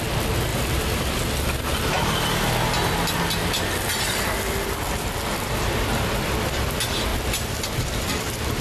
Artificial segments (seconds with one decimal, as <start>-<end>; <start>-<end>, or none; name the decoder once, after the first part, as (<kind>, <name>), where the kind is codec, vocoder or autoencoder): 0.5-1.2 (vocoder, BigVGAN v2); 3.4-6.1; 7.1-8.6

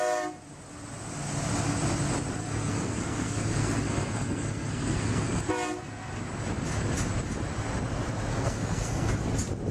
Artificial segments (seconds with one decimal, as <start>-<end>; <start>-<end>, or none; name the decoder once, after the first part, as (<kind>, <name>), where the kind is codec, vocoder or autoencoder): 2.4-5.4 (codec, SNAC); 8.3-9.1

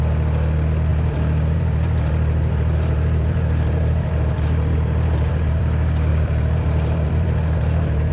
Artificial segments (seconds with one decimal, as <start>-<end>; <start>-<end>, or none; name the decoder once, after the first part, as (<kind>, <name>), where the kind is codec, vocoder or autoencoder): 0.9-5.6 (vocoder, BigVGAN v2); 6.1-8.1

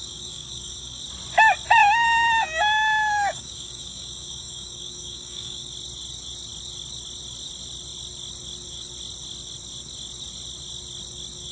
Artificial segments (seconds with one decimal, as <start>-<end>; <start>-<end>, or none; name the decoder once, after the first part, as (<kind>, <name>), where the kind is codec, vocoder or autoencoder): 0.0-1.0 (codec, DAC); 1.8-5.7